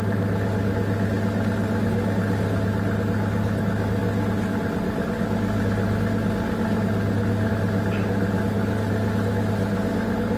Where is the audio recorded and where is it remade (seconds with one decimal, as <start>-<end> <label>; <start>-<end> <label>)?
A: 0.0-10.4 recorded